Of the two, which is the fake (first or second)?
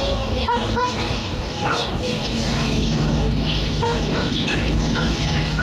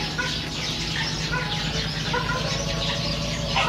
first